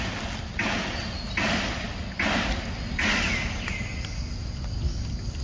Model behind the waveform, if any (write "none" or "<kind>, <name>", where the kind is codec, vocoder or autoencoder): none